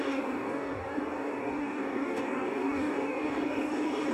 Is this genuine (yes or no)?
no